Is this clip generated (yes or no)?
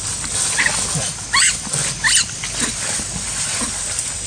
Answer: no